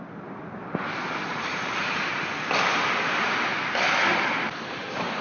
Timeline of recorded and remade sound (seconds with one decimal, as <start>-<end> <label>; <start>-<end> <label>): 0.0-1.3 recorded; 1.3-2.3 remade; 2.3-4.1 recorded; 4.1-5.2 remade